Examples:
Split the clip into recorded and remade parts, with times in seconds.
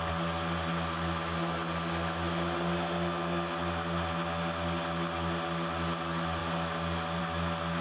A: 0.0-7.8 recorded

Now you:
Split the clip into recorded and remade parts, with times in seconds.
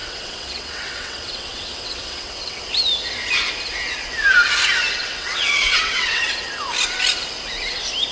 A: 0.0-2.6 remade; 2.6-5.0 recorded; 5.0-6.2 remade; 6.2-8.1 recorded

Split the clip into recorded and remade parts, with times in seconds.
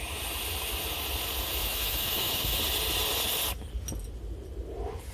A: 0.0-1.6 recorded; 1.6-2.6 remade; 2.6-5.1 recorded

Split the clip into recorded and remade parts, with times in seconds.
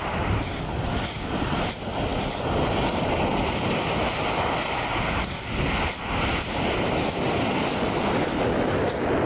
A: 0.0-9.3 recorded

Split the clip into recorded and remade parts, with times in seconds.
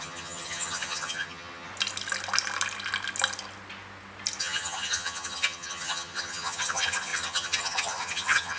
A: 0.0-1.7 remade; 1.7-4.4 recorded; 4.4-8.6 remade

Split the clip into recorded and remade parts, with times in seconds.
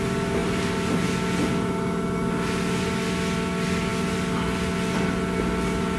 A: 0.0-6.0 recorded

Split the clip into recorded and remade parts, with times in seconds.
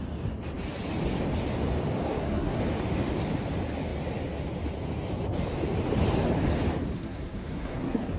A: 0.0-2.1 recorded; 2.1-2.6 remade; 2.6-6.9 recorded; 6.9-8.2 remade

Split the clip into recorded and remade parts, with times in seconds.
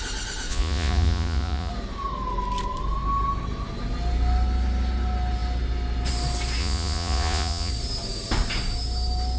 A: 0.0-0.5 recorded; 0.5-1.7 remade; 1.7-6.6 recorded; 6.6-7.7 remade; 7.7-9.4 recorded